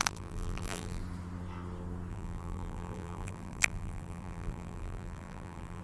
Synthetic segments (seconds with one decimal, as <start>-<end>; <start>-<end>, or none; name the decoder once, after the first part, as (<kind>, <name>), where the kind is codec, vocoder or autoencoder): 0.0-1.0 (vocoder, BigVGAN v2); 2.1-5.8